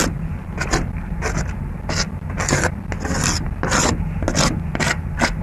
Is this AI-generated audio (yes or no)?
no